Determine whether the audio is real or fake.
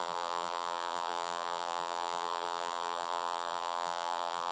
fake